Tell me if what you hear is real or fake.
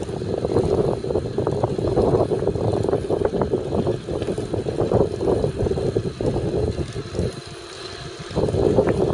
real